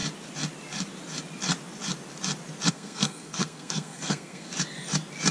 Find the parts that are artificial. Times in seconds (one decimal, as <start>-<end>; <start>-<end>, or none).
2.7-4.5